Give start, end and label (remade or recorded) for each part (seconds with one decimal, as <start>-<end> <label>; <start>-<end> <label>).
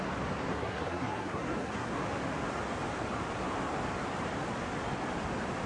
0.0-0.5 recorded; 0.5-1.9 remade; 1.9-5.7 recorded